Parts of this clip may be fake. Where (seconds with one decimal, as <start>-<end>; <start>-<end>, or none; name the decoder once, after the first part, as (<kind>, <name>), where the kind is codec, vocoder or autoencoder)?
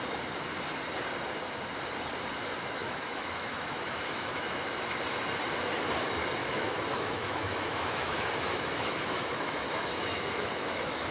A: 2.8-4.6 (autoencoder, DAC-VAE); 6.4-11.1